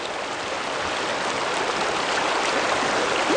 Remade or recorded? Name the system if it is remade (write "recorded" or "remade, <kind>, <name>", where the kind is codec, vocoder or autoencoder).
recorded